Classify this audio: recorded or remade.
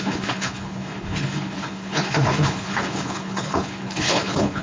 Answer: remade